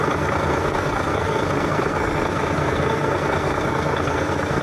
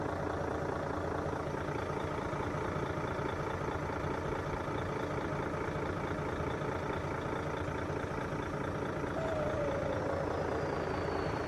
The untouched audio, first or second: second